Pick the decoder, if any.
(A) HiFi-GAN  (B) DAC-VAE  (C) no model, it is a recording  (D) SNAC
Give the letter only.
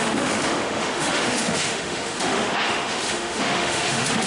B